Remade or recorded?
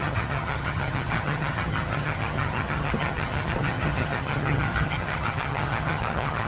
remade